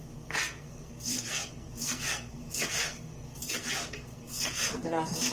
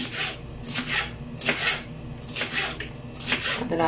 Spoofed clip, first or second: first